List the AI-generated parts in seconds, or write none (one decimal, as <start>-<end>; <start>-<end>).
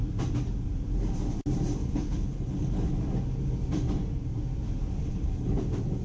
1.8-2.9; 5.0-5.6